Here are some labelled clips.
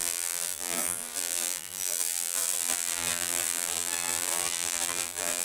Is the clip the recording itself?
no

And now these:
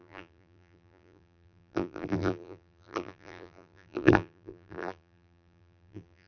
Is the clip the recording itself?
no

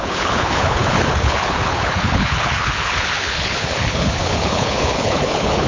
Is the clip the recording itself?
no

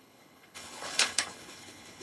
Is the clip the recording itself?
no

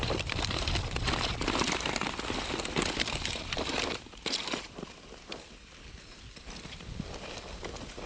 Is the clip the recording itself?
yes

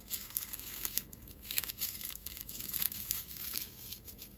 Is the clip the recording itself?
no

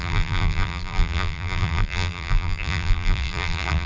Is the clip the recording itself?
no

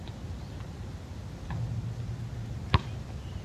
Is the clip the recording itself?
yes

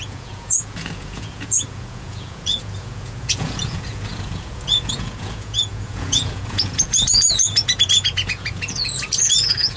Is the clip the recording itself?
no